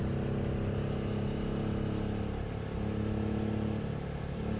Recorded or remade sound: recorded